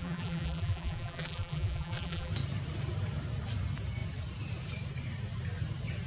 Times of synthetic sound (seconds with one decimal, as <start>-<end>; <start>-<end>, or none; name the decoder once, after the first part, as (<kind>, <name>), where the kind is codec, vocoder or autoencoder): 0.0-2.3 (vocoder, BigVGAN v2)